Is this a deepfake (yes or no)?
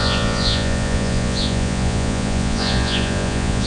yes